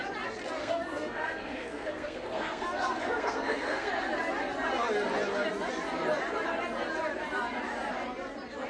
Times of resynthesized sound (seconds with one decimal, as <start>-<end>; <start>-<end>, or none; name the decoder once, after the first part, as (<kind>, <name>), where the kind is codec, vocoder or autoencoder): 0.6-3.9 (codec, SNAC)